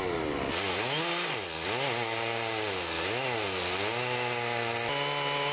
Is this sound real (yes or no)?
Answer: yes